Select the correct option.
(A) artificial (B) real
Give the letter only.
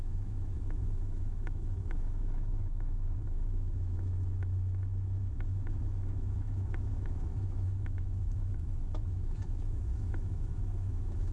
A